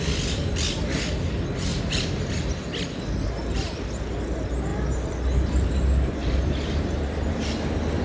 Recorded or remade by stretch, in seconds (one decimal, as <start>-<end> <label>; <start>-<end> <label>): 0.0-1.7 recorded; 1.7-2.3 remade; 2.3-6.2 recorded; 6.2-7.3 remade; 7.3-8.0 recorded